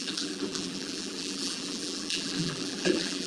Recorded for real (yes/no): no